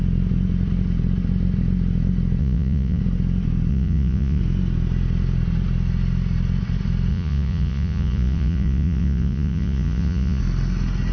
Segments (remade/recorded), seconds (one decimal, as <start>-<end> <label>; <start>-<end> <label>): 0.0-2.4 recorded; 2.4-3.0 remade; 3.0-3.7 recorded; 3.7-4.4 remade; 4.4-7.1 recorded; 7.1-10.4 remade; 10.4-11.1 recorded